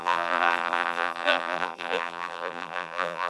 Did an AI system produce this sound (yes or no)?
yes